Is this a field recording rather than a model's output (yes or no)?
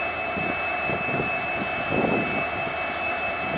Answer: yes